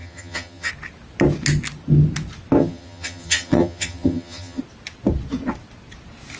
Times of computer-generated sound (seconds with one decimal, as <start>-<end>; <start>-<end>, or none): 0.0-0.7; 2.6-4.6